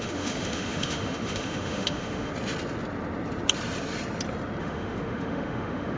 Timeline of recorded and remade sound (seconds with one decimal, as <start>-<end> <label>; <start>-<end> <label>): 0.0-2.3 remade; 2.3-4.6 recorded; 4.6-6.0 remade